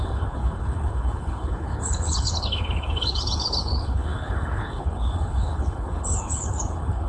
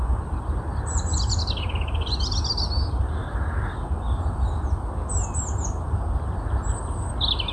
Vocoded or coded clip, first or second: first